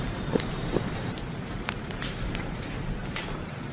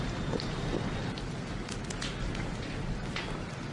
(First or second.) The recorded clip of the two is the second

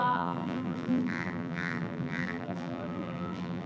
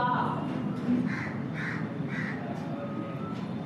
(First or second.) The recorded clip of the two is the second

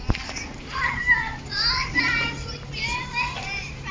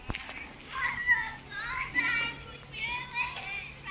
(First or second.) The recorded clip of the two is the second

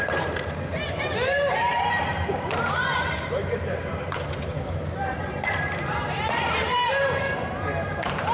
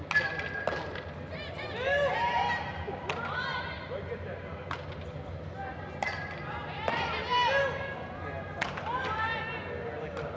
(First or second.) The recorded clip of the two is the second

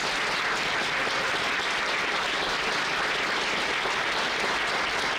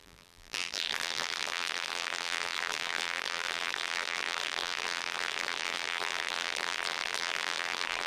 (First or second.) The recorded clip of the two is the first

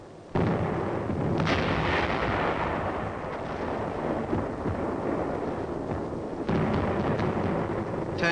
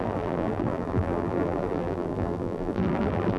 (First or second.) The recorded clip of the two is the first